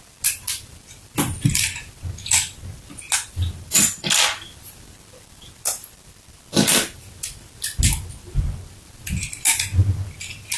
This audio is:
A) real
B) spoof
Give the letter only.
A